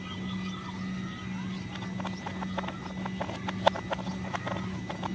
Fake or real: real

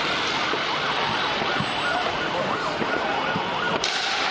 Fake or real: real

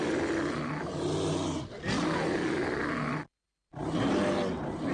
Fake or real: real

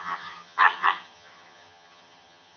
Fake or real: fake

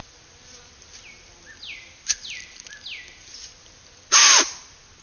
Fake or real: real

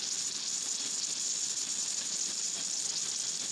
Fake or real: real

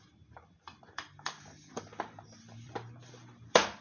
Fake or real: fake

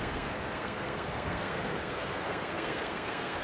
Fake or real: fake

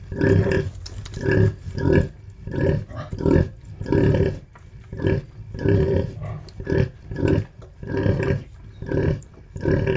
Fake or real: real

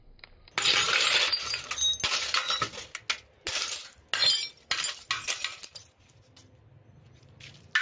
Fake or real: real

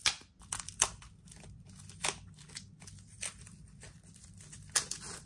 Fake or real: real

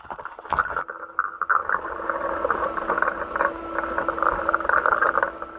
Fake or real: real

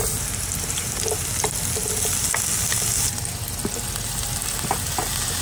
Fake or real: real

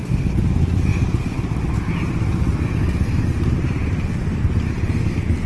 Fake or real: real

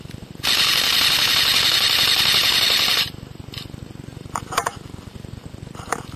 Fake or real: real